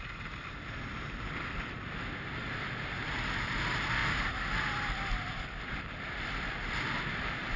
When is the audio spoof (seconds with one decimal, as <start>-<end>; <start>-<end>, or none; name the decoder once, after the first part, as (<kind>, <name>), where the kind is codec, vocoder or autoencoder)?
0.0-4.0 (vocoder, BigVGAN v2); 5.7-7.6